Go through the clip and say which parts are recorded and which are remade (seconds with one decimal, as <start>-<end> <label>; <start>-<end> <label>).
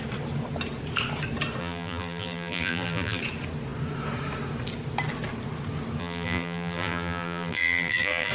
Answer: 0.0-1.6 recorded; 1.6-3.2 remade; 3.2-6.0 recorded; 6.0-8.3 remade